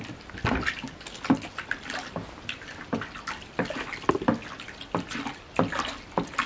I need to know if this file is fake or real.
real